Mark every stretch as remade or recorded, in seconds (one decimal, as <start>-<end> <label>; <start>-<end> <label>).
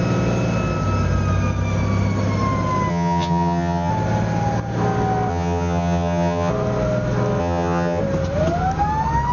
0.0-2.9 recorded; 2.9-3.9 remade; 3.9-5.3 recorded; 5.3-6.5 remade; 6.5-7.4 recorded; 7.4-8.0 remade; 8.0-9.3 recorded